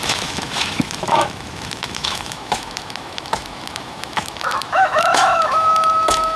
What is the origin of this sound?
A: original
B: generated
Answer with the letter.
B